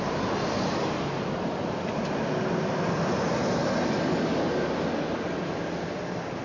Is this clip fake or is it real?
real